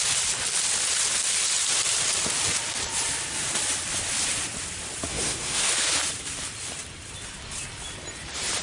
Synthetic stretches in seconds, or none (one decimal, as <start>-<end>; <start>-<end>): 5.1-5.7